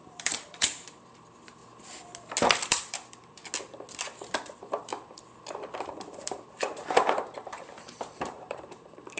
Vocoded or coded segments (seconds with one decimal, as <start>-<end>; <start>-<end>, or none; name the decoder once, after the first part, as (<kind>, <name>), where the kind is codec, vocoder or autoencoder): 0.0-1.6 (vocoder, BigVGAN v2); 2.4-3.4; 4.4-4.9; 5.8-9.2